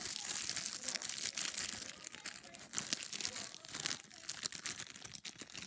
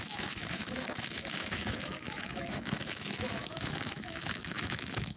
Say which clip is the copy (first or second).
second